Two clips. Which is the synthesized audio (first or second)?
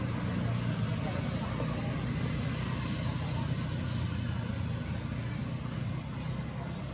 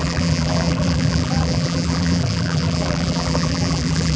second